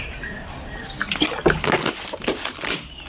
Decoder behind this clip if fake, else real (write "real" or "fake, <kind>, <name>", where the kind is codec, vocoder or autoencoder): real